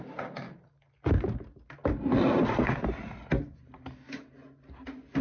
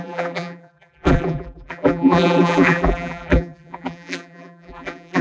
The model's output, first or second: second